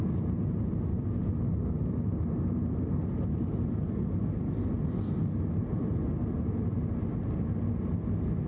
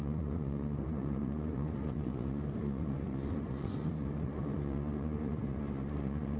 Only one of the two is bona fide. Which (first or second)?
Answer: first